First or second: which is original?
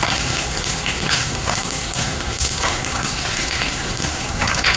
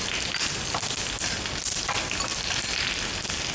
second